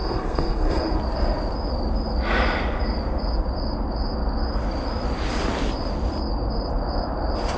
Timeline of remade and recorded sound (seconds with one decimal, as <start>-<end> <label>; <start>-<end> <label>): 0.0-1.0 remade; 1.0-7.6 recorded